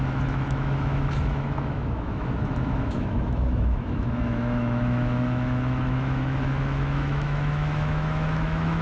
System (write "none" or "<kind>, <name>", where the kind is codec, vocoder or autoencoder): autoencoder, DAC-VAE